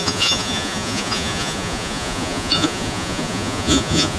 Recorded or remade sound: remade